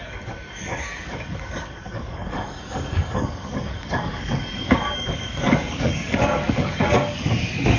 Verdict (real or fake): fake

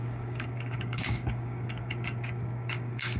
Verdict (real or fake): fake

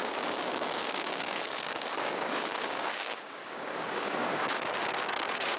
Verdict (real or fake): fake